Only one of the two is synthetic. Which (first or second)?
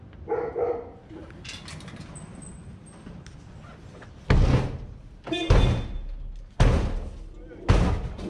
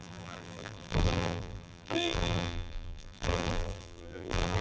second